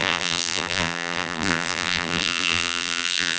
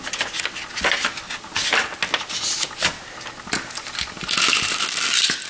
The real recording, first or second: second